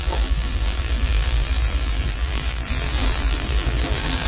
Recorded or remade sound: remade